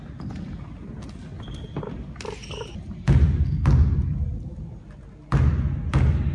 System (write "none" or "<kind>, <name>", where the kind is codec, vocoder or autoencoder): none